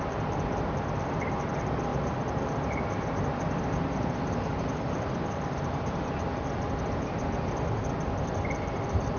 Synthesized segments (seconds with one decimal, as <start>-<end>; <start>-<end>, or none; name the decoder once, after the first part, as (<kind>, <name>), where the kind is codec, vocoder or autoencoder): 1.9-5.8 (vocoder, BigVGAN v2)